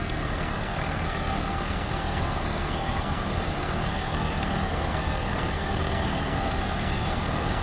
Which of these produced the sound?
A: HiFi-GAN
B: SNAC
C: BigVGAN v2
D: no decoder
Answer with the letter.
B